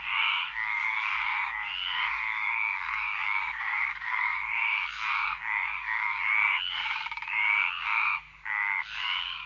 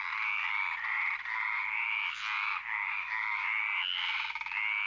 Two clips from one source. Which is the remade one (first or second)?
first